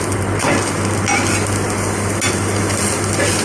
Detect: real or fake real